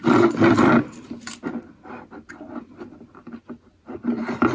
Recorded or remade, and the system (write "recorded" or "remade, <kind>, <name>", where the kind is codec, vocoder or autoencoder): recorded